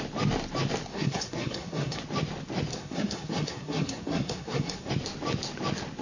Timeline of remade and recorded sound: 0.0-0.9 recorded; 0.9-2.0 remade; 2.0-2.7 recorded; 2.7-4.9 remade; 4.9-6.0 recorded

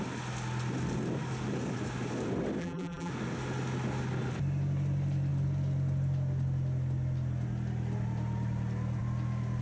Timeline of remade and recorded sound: 0.0-2.6 recorded; 2.6-3.1 remade; 3.1-9.6 recorded

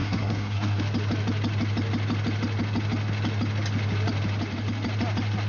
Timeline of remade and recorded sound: 0.0-0.8 remade; 0.8-5.5 recorded

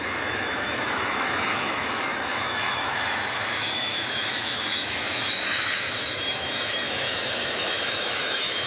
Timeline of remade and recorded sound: 0.0-8.7 remade

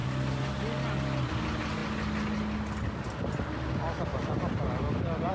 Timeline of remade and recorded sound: 0.0-5.3 recorded